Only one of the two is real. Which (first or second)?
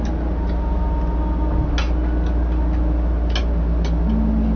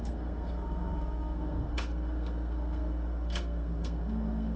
first